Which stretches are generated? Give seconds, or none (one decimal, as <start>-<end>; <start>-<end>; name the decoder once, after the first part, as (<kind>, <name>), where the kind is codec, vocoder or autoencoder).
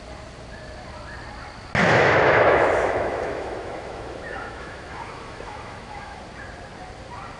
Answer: 1.8-6.2 (autoencoder, DAC-VAE)